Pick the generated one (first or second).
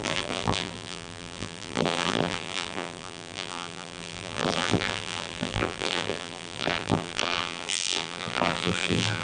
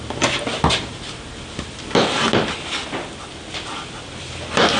first